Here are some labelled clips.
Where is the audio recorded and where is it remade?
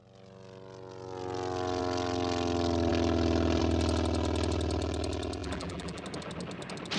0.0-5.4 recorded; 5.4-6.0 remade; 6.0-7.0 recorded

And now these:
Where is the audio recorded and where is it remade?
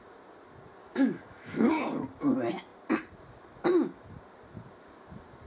0.0-0.8 recorded; 0.8-1.7 remade; 1.7-5.5 recorded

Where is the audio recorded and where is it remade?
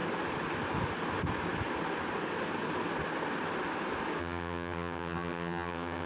0.0-4.2 recorded; 4.2-6.1 remade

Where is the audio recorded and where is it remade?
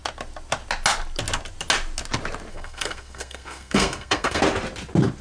0.0-2.5 recorded; 2.5-4.4 remade; 4.4-5.2 recorded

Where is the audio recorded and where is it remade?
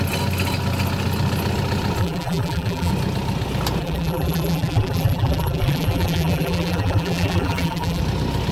0.0-2.0 recorded; 2.0-2.9 remade; 2.9-3.8 recorded; 3.8-8.0 remade; 8.0-8.5 recorded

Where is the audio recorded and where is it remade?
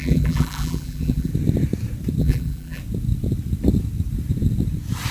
0.0-1.3 remade; 1.3-2.2 recorded; 2.2-2.8 remade; 2.8-5.1 recorded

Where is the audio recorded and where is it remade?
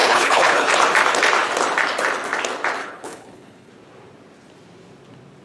0.0-0.7 remade; 0.7-2.8 recorded; 2.8-3.7 remade; 3.7-5.4 recorded